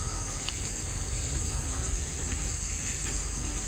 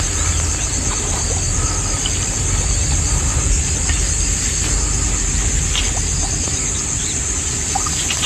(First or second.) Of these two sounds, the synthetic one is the first